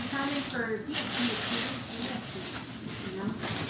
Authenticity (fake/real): real